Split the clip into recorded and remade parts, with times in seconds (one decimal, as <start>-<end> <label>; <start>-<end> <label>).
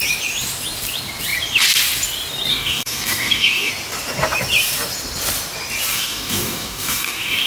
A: 0.0-2.5 recorded; 2.5-3.7 remade; 3.7-5.9 recorded; 5.9-7.5 remade